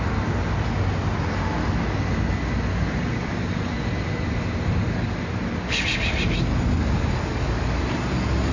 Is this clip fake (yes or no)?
no